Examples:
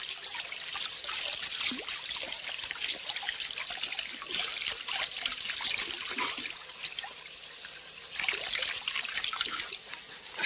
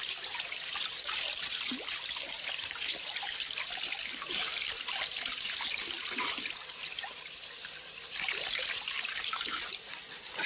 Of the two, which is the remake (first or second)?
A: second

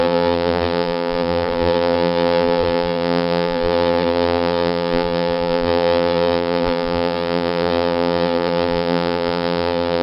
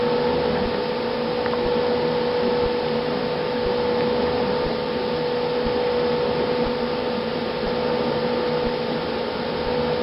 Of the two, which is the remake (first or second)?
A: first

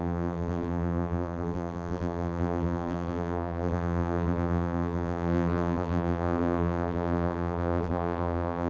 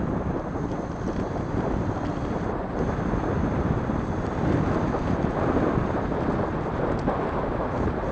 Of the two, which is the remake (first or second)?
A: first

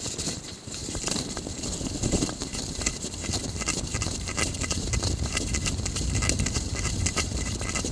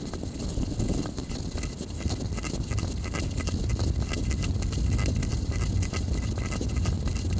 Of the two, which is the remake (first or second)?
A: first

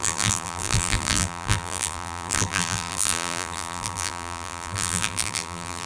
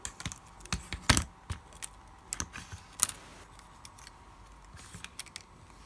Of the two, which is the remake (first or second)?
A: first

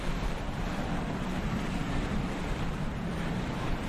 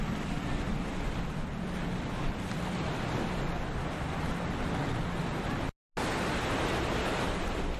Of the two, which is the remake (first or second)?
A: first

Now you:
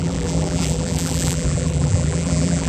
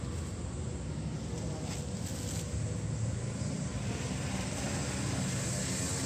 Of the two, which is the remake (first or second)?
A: first